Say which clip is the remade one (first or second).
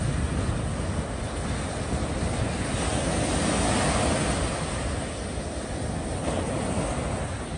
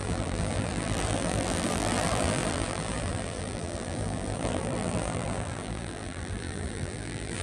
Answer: second